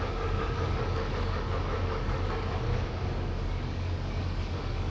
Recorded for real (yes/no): no